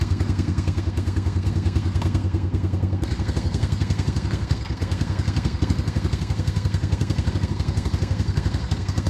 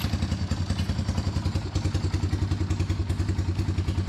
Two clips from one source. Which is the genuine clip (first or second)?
second